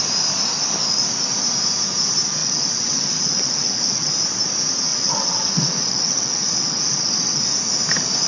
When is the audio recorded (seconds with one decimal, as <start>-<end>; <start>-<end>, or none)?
0.0-2.4; 4.1-4.9; 7.4-8.3

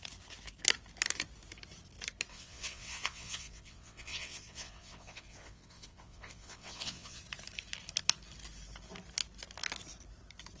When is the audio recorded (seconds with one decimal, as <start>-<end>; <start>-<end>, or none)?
0.0-2.3; 7.2-10.6

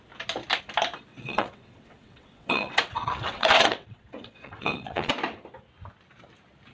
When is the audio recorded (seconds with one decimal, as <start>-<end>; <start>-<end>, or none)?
0.0-1.1; 5.1-6.7

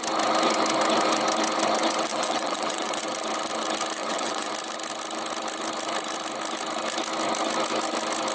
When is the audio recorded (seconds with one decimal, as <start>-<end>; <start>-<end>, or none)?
0.0-2.1; 3.0-4.0; 4.5-8.3

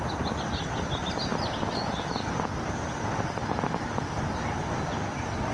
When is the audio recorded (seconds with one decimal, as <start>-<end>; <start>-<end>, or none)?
0.0-5.5

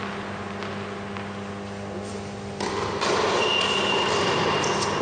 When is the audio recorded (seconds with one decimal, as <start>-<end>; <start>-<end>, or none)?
0.0-5.0

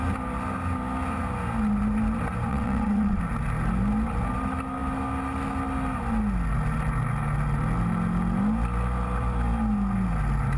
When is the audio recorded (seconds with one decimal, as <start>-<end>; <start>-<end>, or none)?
0.0-2.5; 3.2-10.6

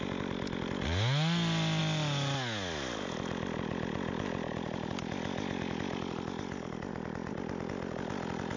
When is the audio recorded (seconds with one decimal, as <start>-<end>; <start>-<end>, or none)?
0.0-8.6